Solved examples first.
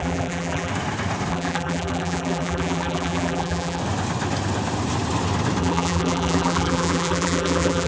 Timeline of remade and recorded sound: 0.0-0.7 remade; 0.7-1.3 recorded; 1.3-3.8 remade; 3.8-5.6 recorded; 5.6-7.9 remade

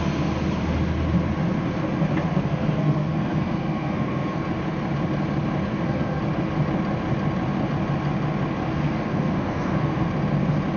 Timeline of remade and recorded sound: 0.0-2.3 recorded; 2.3-4.4 remade; 4.4-5.7 recorded; 5.7-6.2 remade; 6.2-8.7 recorded; 8.7-10.1 remade; 10.1-10.8 recorded

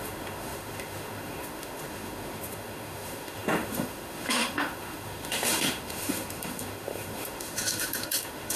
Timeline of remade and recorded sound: 0.0-8.6 remade

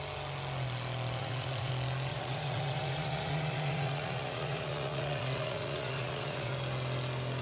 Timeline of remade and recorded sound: 0.0-1.2 recorded; 1.2-1.7 remade; 1.7-2.1 recorded; 2.1-6.5 remade; 6.5-7.4 recorded